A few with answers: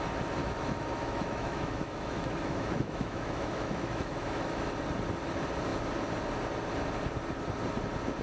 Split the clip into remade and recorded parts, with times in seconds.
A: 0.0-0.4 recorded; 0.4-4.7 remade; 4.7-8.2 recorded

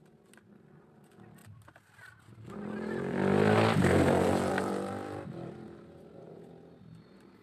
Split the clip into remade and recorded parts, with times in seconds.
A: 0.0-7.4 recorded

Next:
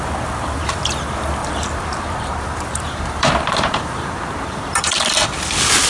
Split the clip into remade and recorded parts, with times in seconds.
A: 0.0-1.4 recorded; 1.4-4.9 remade; 4.9-5.9 recorded